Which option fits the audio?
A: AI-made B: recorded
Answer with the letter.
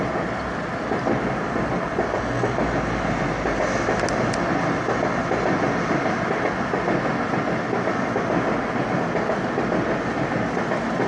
B